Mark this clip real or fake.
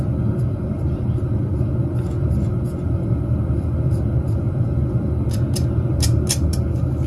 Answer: real